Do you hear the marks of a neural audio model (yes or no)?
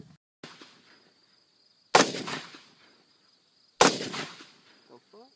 no